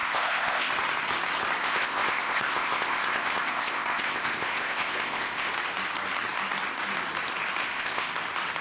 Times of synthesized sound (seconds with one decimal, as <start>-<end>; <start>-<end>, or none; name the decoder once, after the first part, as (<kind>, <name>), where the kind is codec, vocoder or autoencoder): 0.0-0.7 (codec, ZipCodec); 1.6-5.5; 7.6-8.1

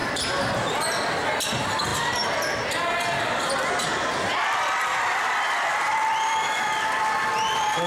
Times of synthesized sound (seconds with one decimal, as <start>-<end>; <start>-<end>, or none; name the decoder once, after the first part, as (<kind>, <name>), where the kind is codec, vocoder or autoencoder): 0.7-7.9 (vocoder, BigVGAN v2)

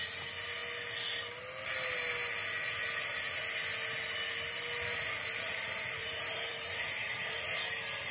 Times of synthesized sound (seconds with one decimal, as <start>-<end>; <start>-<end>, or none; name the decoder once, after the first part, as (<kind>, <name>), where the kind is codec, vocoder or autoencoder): 6.0-7.4 (vocoder, BigVGAN v2)

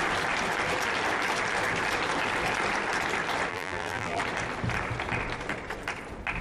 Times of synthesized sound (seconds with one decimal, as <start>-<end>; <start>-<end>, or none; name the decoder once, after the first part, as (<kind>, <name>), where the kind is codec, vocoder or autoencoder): 3.5-4.2 (vocoder, BigVGAN v2)

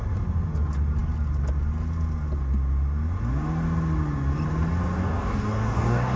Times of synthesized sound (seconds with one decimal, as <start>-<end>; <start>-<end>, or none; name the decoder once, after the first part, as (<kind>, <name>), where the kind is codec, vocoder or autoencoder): 5.0-6.2 (codec, DAC)

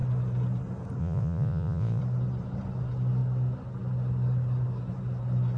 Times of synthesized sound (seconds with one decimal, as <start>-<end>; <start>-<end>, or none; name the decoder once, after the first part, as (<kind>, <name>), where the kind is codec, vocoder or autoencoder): 1.0-2.0 (vocoder, Vocos)

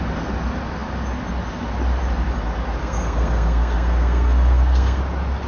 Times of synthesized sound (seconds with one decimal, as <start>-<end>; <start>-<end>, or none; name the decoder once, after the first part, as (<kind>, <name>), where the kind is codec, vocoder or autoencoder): 2.8-5.0 (codec, SNAC)